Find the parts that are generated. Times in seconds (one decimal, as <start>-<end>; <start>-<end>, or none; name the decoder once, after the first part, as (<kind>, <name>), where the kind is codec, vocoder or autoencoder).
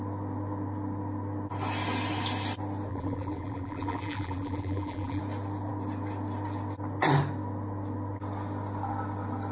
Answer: 2.9-5.2 (vocoder, BigVGAN v2)